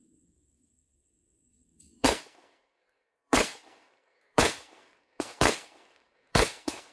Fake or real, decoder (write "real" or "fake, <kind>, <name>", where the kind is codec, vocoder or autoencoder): fake, codec, SNAC